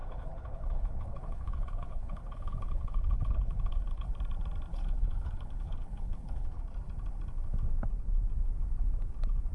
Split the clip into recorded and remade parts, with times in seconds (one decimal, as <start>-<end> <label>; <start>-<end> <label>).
0.0-4.1 remade; 4.1-4.7 recorded; 4.7-6.6 remade; 6.6-9.5 recorded